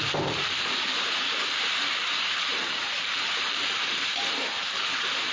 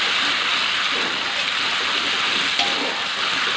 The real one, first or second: second